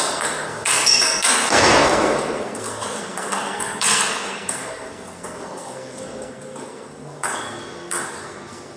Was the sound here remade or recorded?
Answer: remade